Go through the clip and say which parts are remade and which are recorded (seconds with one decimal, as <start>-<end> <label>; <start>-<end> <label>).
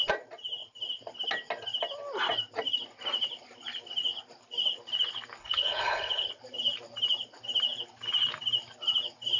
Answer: 0.0-5.4 recorded; 5.4-6.3 remade; 6.3-9.4 recorded